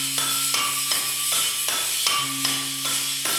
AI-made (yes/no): no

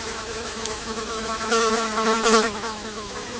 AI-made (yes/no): yes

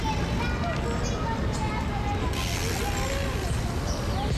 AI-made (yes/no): no